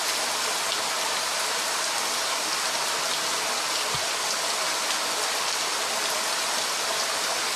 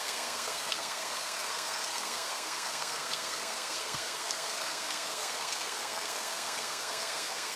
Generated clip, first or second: second